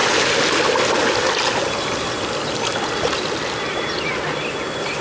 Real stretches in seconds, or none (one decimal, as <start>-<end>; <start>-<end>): 0.0-5.0